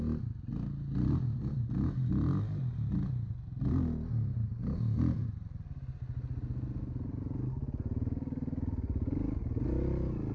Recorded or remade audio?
recorded